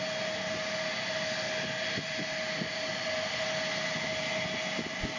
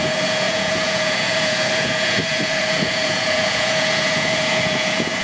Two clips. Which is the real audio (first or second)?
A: first